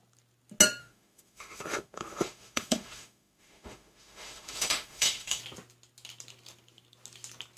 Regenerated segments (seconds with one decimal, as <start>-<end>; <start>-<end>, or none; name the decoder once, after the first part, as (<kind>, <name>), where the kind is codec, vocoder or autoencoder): 0.8-5.4 (autoencoder, DAC-VAE)